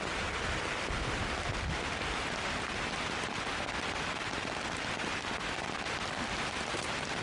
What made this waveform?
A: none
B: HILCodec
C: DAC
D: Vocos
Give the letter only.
A